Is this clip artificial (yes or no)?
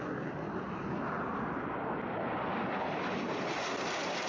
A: no